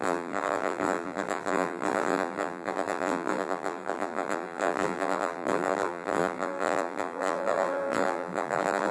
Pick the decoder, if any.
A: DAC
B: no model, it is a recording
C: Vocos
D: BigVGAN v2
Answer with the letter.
D